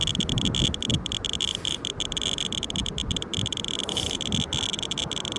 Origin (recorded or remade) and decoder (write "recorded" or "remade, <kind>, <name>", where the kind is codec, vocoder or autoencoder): recorded